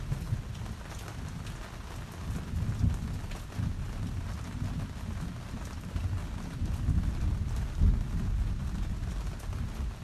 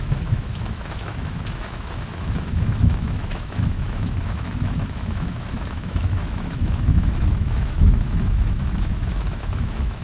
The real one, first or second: first